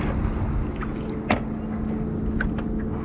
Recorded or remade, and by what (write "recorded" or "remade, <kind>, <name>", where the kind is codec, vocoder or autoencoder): recorded